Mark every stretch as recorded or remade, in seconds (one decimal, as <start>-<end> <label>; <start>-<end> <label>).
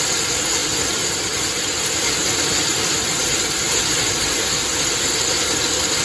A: 0.0-6.0 recorded